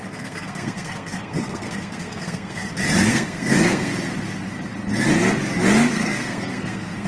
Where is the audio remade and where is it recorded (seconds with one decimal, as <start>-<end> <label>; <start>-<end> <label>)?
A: 0.0-2.6 remade; 2.6-3.1 recorded; 3.1-3.9 remade; 3.9-5.9 recorded; 5.9-7.1 remade